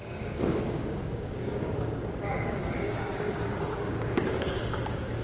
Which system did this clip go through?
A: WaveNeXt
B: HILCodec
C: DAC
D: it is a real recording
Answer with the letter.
C